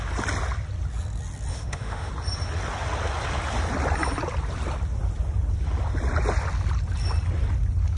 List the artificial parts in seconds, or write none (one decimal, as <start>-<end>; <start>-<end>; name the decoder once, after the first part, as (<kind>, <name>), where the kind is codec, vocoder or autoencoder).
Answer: 1.5-2.1 (autoencoder, DAC-VAE)